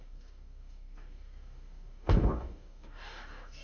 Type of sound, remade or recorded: remade